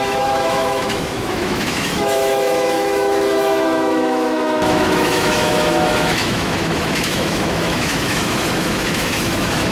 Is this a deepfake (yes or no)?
yes